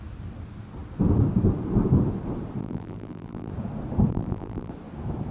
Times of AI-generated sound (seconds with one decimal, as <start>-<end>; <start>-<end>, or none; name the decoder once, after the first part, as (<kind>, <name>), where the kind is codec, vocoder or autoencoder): 2.6-3.5 (vocoder, BigVGAN v2); 4.1-4.7